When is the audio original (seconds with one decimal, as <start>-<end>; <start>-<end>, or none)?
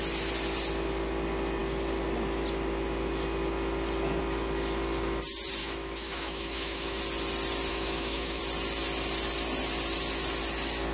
0.0-5.6; 7.0-7.7; 8.4-10.9